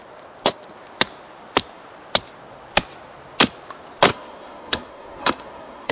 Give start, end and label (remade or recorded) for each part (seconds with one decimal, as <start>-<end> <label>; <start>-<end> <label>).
0.0-4.1 recorded; 4.1-5.9 remade